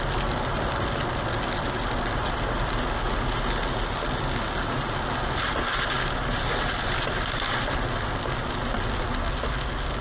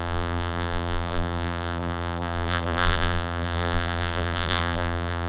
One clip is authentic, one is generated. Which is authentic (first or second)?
first